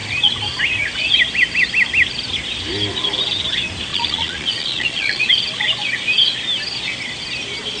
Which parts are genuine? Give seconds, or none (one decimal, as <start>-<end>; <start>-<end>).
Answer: 0.0-3.9; 5.2-7.8